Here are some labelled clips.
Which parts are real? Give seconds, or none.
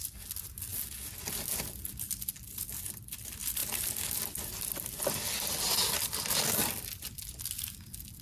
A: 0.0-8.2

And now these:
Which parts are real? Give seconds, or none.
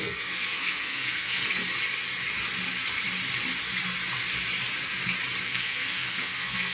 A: 1.4-5.4